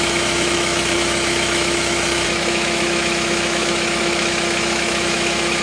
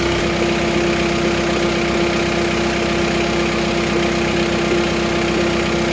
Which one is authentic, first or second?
second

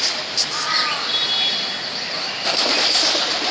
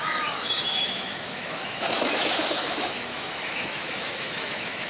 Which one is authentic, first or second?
first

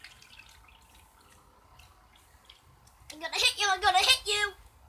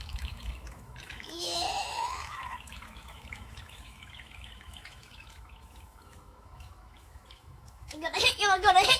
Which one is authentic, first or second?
first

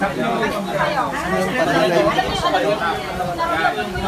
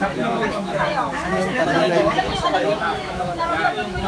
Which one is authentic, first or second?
first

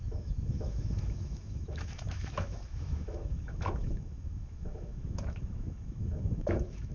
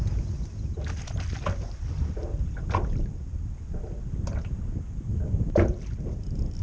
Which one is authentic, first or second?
second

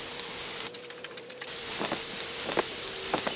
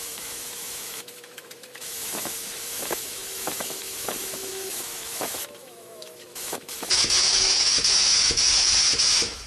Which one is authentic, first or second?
first